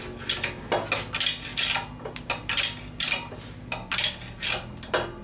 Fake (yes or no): no